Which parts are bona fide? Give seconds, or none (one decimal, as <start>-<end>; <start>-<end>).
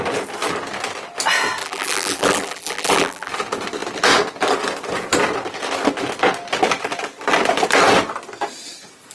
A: 0.0-1.6; 3.3-9.1